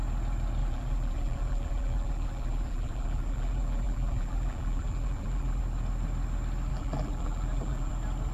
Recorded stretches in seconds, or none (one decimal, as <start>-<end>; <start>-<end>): 0.0-0.6; 5.6-6.7; 7.9-8.3